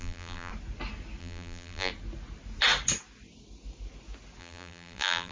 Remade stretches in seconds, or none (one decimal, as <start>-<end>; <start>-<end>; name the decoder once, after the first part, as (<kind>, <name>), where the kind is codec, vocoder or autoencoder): 0.0-0.5 (vocoder, BigVGAN v2); 1.2-1.9; 4.4-5.3